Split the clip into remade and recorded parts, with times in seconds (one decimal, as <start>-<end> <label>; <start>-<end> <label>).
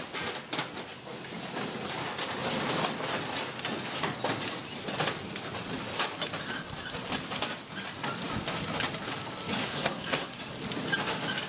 0.0-9.6 recorded; 9.6-10.4 remade; 10.4-11.5 recorded